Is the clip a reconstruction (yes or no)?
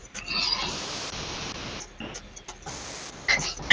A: no